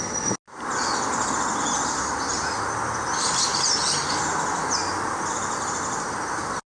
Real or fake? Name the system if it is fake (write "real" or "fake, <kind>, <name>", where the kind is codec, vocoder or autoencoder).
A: real